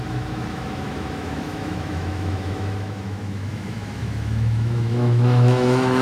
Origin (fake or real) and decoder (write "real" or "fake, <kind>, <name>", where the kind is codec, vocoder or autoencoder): fake, autoencoder, DAC-VAE